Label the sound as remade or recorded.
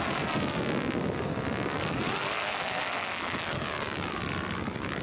recorded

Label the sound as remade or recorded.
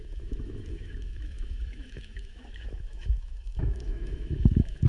remade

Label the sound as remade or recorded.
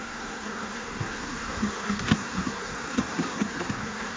remade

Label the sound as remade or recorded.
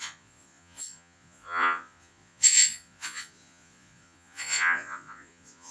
remade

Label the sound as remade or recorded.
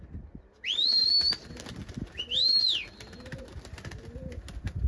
recorded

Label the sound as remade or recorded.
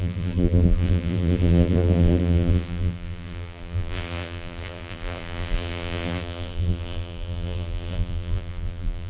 remade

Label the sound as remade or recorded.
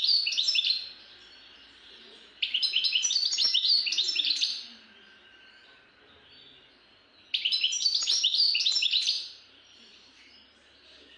remade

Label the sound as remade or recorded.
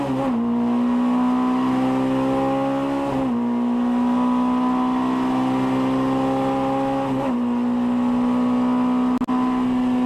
recorded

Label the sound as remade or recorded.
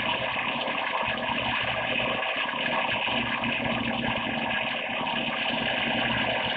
recorded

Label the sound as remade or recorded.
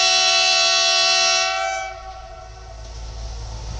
recorded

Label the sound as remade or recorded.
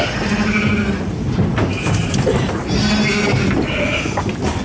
recorded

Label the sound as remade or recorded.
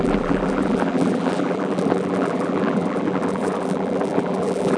remade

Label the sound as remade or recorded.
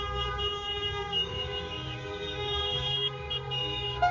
remade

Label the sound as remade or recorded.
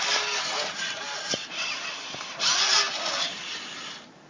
recorded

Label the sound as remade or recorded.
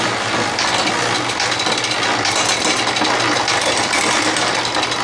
recorded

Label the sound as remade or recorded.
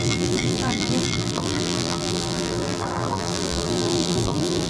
remade